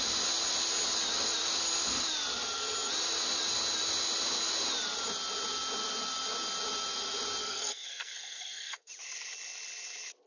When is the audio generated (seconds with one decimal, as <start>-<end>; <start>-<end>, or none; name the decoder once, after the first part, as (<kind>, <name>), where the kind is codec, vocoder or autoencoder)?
7.4-8.9 (codec, SNAC)